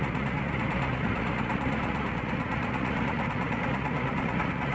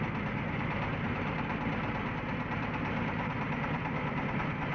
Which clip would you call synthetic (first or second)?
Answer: first